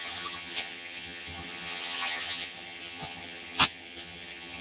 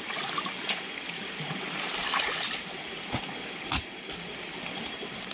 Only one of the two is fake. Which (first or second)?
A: first